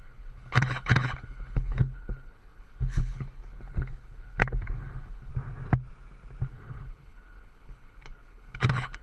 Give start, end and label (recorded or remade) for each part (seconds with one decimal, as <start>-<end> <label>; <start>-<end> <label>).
0.0-5.3 remade; 5.3-6.5 recorded; 6.5-9.0 remade